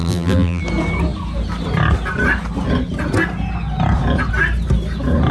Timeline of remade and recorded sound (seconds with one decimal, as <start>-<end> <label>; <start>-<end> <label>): 0.0-0.6 remade; 0.6-5.3 recorded